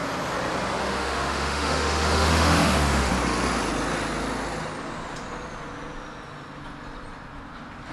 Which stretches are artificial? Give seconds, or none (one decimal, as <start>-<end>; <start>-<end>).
0.8-3.1